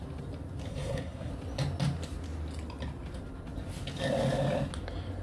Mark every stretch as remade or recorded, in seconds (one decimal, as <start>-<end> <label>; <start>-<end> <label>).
0.0-0.7 recorded; 0.7-1.3 remade; 1.3-5.2 recorded